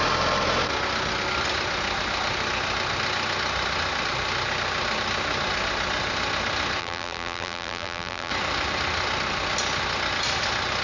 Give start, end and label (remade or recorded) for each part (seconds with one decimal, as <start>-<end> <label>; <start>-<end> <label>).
0.0-6.8 recorded; 6.8-8.3 remade; 8.3-10.8 recorded